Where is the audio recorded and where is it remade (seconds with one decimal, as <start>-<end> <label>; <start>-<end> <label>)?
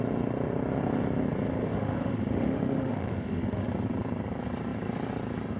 0.0-1.6 recorded; 1.6-3.7 remade; 3.7-5.6 recorded